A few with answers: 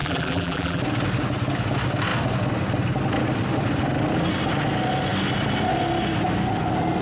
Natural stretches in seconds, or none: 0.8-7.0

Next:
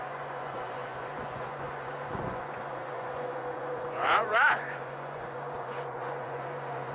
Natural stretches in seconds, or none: none

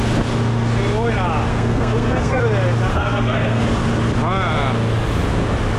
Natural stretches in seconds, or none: 0.0-1.5; 2.4-2.9; 3.6-5.8

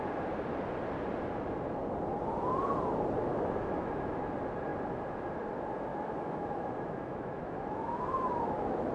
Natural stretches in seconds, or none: 0.0-3.3; 4.2-5.9

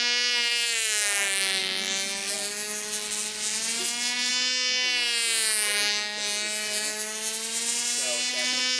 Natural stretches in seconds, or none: 1.6-3.8; 4.3-8.3

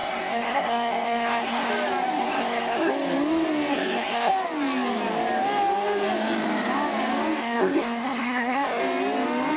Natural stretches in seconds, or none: 1.7-2.2; 2.9-3.7; 4.3-7.4; 8.8-9.6

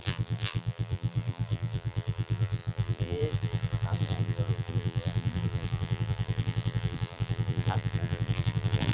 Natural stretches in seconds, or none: none